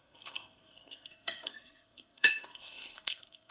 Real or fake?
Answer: fake